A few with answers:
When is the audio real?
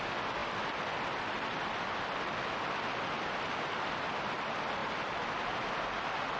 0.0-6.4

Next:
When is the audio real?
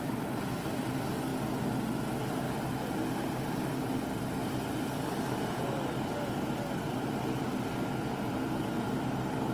0.0-9.5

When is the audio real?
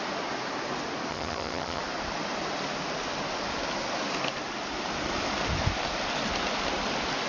0.0-1.1; 1.8-7.3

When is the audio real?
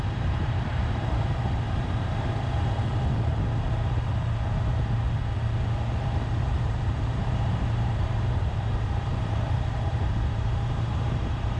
3.3-6.4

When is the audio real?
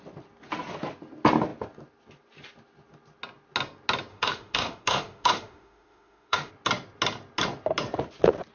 0.0-4.1; 6.5-8.5